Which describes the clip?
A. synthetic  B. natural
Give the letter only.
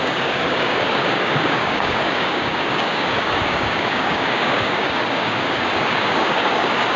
A